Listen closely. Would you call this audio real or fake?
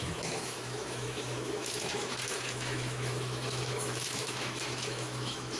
fake